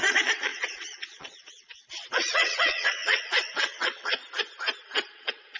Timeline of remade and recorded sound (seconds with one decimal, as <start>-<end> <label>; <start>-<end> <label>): 0.0-4.2 remade; 4.2-5.1 recorded; 5.1-5.6 remade